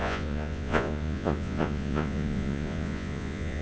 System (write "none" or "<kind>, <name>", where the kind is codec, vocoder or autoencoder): vocoder, Vocos